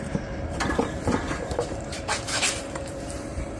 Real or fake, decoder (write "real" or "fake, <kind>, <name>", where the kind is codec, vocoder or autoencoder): fake, vocoder, BigVGAN v2